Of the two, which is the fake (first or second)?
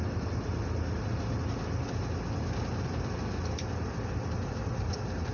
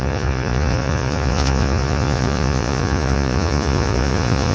second